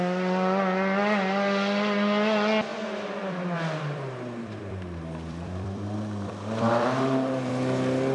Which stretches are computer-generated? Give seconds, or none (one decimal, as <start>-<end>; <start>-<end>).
2.7-7.5